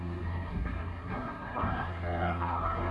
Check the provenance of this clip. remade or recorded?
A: remade